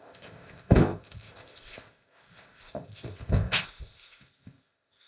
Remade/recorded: remade